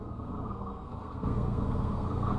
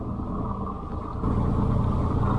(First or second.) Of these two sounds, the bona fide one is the second